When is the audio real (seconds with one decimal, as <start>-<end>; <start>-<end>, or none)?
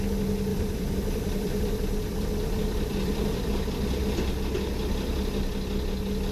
0.0-0.5; 4.3-6.3